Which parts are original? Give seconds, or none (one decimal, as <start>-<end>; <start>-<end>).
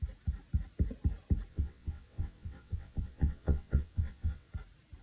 0.0-1.5; 4.5-5.0